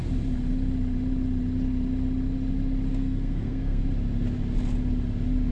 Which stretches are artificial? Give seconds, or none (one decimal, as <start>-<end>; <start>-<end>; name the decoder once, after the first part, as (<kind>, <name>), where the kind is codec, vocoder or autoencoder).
2.9-3.8 (codec, SNAC)

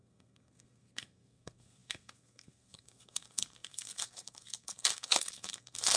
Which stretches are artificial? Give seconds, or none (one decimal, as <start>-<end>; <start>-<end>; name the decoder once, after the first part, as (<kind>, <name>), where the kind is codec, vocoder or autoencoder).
0.0-6.0 (codec, SNAC)

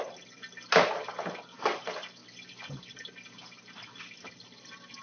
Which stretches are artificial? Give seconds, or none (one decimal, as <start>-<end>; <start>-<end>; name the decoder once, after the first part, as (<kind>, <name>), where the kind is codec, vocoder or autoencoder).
none

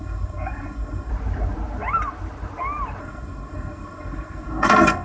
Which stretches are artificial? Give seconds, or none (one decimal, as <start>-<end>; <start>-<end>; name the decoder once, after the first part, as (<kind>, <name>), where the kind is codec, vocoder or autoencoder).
0.0-1.1 (codec, SNAC); 3.0-5.0

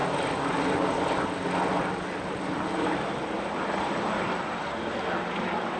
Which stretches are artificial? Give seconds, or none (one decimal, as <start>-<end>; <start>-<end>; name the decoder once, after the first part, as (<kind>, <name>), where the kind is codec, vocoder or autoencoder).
none

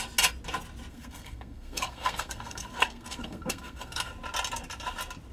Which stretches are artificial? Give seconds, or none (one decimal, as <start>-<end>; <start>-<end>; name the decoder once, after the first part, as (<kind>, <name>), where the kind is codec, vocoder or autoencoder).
0.9-4.1 (codec, SNAC)

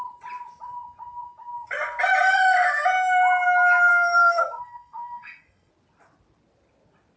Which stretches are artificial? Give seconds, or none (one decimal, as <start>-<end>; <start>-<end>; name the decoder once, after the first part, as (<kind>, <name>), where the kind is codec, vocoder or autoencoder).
3.9-5.7 (codec, SNAC)

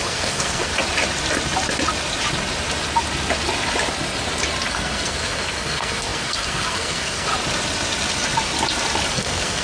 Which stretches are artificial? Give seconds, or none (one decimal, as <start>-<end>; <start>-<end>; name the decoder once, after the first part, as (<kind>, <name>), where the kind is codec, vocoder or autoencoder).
0.0-0.7 (codec, SNAC); 4.7-7.3; 9.1-9.6